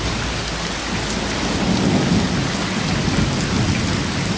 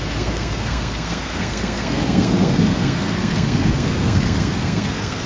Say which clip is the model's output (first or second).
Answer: second